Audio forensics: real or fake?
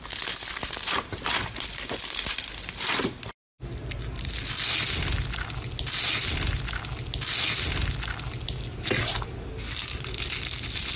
real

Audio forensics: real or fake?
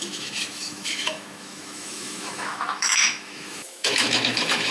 fake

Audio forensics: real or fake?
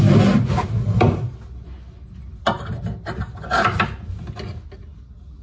real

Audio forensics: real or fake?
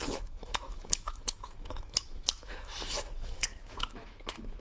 fake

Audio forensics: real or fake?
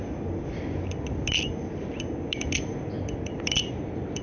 real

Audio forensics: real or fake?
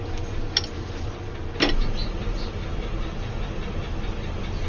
real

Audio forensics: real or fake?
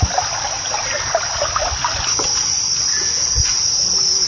real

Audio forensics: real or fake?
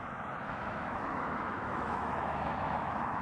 fake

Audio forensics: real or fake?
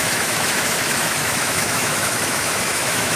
fake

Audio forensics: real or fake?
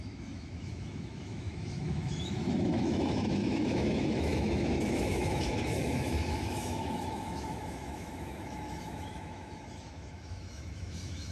fake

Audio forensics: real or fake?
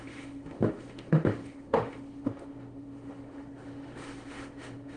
fake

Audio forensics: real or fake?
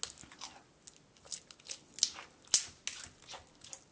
real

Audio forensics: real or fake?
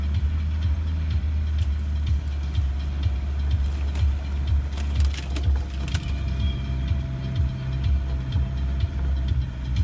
real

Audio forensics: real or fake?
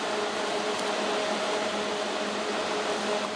real